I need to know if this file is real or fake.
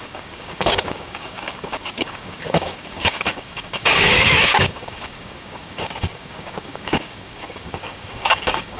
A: fake